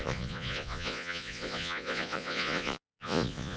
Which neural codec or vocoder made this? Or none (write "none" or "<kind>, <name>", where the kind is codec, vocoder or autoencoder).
vocoder, Vocos